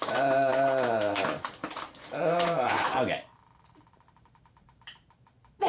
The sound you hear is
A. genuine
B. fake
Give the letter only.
B